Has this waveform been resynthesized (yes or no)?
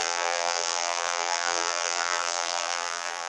yes